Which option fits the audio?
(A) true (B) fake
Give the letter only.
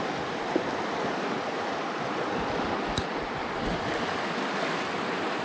A